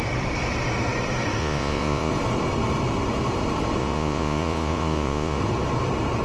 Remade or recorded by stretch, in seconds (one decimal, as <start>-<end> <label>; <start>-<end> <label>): 0.0-1.4 recorded; 1.4-2.1 remade; 2.1-3.8 recorded; 3.8-5.4 remade; 5.4-6.2 recorded